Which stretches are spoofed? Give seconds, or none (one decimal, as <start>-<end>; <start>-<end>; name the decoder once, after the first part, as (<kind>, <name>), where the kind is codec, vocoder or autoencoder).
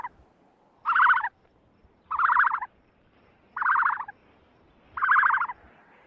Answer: 1.8-3.4 (vocoder, BigVGAN v2)